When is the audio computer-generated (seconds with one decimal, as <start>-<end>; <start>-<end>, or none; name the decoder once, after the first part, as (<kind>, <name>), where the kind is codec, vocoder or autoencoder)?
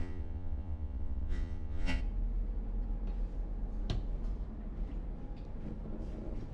0.0-2.0 (vocoder, Vocos)